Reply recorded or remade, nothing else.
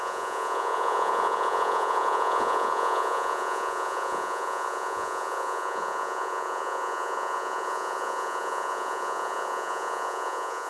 remade